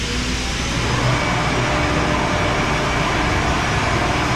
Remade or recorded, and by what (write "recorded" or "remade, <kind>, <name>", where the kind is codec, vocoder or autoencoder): recorded